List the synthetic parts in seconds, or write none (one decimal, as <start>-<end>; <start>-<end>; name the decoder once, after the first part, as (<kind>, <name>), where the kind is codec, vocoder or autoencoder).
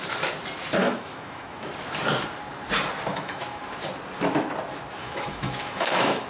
0.8-1.7 (autoencoder, DAC-VAE); 3.1-3.6; 5.0-6.3